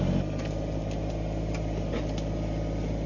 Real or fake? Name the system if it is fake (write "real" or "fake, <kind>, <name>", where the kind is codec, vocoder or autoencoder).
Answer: real